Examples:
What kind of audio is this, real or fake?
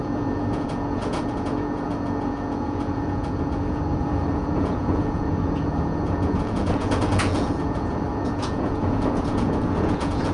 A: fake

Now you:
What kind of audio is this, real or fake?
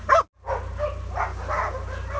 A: real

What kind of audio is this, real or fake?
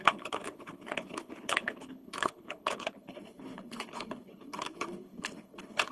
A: fake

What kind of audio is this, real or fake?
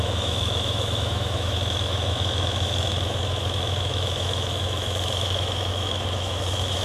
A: fake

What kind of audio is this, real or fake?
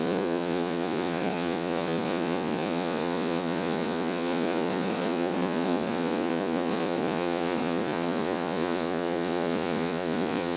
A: fake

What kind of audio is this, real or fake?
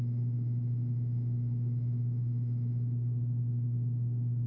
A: fake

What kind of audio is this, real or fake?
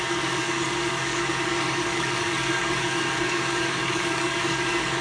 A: fake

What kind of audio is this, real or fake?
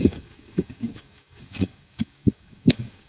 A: fake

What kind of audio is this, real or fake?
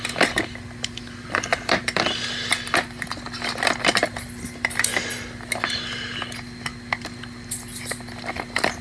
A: real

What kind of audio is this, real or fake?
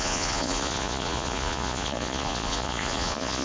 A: fake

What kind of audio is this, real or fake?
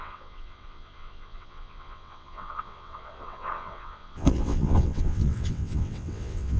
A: fake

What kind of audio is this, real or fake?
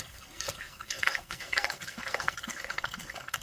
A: fake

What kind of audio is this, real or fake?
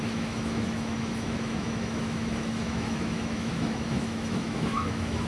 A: fake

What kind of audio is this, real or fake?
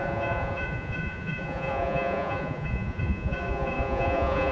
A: fake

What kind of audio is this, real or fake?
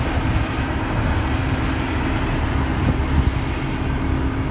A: real